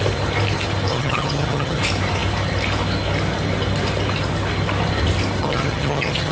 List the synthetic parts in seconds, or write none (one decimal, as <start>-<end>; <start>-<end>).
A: 0.9-1.8; 5.4-6.3